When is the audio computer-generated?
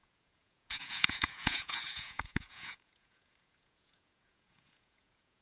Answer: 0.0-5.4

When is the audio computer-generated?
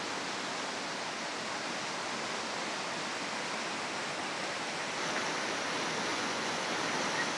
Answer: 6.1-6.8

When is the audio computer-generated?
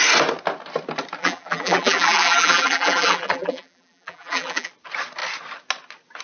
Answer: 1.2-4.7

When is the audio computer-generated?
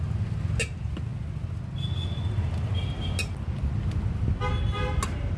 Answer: none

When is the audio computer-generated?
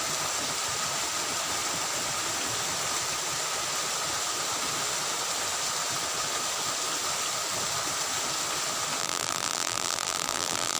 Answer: 9.0-10.8